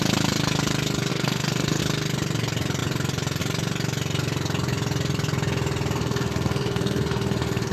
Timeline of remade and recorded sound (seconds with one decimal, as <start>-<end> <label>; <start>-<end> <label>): 0.0-1.1 recorded; 1.1-1.8 remade; 1.8-6.0 recorded; 6.0-7.7 remade